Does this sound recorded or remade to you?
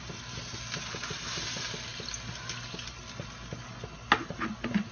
recorded